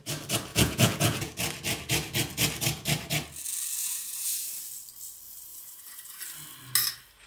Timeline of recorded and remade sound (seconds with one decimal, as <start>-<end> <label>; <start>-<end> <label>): 0.0-0.5 recorded; 0.5-1.3 remade; 1.3-3.8 recorded; 3.8-4.5 remade; 4.5-5.5 recorded; 5.5-6.2 remade; 6.2-7.3 recorded